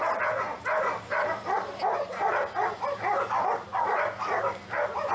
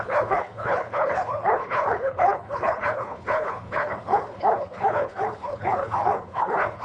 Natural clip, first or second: first